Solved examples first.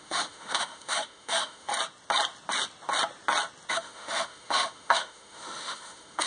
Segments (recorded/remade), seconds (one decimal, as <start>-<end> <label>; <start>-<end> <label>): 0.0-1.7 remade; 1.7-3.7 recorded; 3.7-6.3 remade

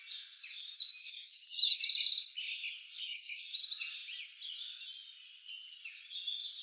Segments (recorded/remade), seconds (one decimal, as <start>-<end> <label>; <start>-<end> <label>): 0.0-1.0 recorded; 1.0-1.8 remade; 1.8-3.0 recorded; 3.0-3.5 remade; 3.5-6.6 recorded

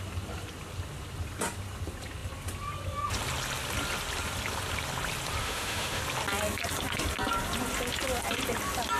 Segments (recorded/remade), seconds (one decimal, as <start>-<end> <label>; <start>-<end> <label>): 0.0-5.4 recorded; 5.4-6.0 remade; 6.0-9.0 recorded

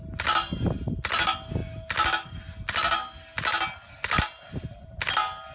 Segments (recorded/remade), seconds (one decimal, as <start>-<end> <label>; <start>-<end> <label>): 0.0-5.5 recorded

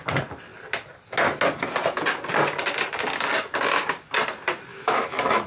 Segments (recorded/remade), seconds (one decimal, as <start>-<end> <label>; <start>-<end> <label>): 0.0-4.7 recorded; 4.7-5.5 remade

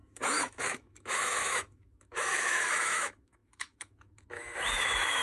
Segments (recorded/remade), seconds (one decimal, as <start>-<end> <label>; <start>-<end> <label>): 0.0-5.2 remade

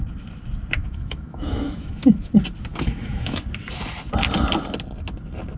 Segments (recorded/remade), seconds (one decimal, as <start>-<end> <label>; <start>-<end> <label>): 0.0-0.8 recorded; 0.8-2.3 remade; 2.3-2.7 recorded; 2.7-3.4 remade; 3.4-5.6 recorded

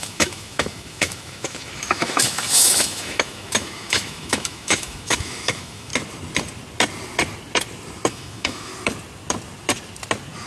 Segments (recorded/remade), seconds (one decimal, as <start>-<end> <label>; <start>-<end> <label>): 0.0-5.9 remade; 5.9-8.1 recorded; 8.1-8.7 remade; 8.7-10.5 recorded